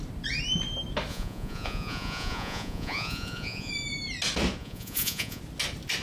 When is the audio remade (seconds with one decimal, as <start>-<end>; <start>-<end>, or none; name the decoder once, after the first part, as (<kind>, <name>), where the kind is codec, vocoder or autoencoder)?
1.1-3.7 (vocoder, Vocos); 4.6-5.4